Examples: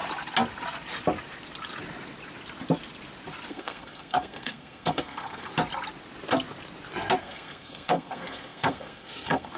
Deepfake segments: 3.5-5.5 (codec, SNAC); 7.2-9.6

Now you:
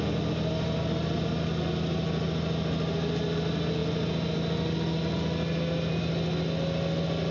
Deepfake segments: none